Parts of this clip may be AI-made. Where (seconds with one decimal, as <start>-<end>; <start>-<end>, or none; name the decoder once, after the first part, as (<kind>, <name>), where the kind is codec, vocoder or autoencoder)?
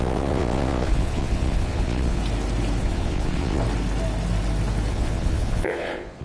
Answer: 0.0-2.2 (vocoder, Vocos); 2.8-3.6; 4.9-6.2